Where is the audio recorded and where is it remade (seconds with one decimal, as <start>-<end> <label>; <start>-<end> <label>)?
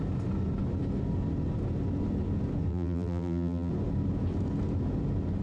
0.0-2.7 recorded; 2.7-3.7 remade; 3.7-5.4 recorded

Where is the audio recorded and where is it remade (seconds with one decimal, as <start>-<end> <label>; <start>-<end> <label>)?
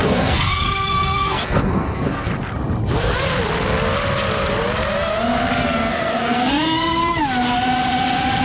0.0-2.3 remade; 2.3-5.6 recorded; 5.6-7.2 remade; 7.2-8.4 recorded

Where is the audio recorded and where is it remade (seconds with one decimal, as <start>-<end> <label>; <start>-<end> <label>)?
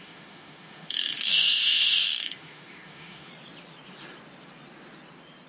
0.0-3.3 remade; 3.3-5.5 recorded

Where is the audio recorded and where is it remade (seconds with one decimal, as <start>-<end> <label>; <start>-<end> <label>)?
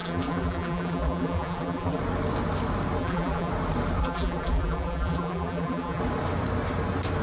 0.0-2.0 remade; 2.0-3.0 recorded; 3.0-3.5 remade; 3.5-4.0 recorded; 4.0-6.0 remade; 6.0-7.2 recorded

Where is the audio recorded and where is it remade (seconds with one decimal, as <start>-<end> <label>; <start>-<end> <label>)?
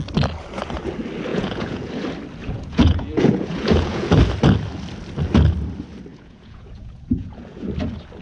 0.0-1.3 recorded; 1.3-1.9 remade; 1.9-2.4 recorded; 2.4-4.1 remade; 4.1-6.1 recorded; 6.1-7.7 remade; 7.7-8.2 recorded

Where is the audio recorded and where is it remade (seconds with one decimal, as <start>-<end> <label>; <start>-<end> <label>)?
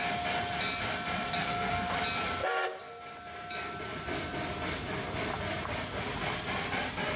0.0-1.4 recorded; 1.4-1.9 remade; 1.9-7.2 recorded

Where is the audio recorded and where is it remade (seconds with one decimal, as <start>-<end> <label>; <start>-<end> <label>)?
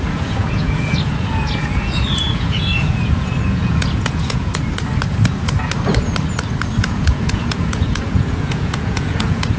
0.0-4.5 remade; 4.5-6.8 recorded; 6.8-9.6 remade